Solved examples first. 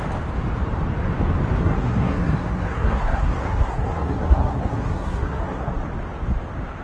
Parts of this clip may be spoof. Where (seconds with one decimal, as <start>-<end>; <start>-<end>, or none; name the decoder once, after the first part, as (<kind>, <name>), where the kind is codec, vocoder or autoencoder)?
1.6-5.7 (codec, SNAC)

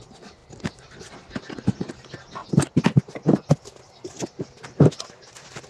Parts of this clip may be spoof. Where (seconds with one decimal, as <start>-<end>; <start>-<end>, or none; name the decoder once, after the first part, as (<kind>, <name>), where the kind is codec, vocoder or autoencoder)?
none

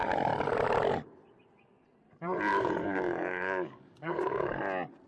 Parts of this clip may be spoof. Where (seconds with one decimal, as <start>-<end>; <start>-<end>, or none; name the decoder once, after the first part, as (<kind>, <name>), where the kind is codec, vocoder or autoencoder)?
2.5-4.6 (codec, DAC)